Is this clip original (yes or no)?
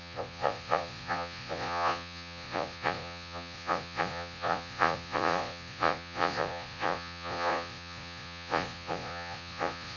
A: no